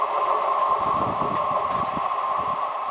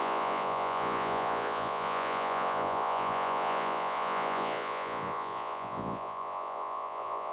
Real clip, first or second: first